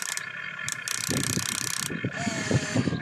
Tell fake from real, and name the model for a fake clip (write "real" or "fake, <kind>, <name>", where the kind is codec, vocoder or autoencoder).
real